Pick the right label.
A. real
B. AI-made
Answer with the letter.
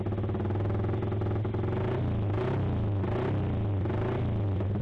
A